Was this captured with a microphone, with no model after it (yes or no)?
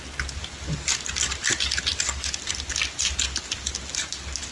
yes